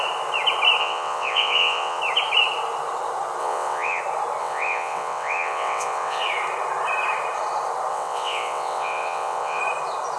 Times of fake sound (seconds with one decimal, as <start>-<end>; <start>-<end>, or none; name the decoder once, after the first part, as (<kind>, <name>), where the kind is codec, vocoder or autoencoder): 0.8-2.0 (vocoder, WaveNeXt); 3.4-4.0; 4.4-6.2; 7.9-9.6